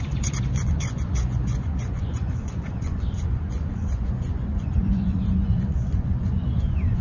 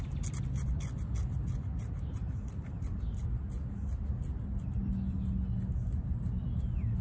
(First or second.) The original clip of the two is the second